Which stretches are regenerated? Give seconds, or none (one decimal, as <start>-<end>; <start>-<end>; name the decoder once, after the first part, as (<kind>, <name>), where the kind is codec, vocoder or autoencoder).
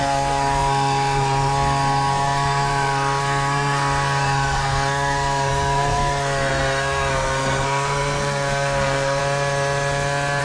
0.0-9.2 (codec, SNAC)